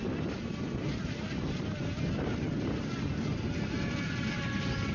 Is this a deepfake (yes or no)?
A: no